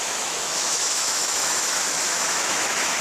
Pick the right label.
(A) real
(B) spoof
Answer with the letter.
B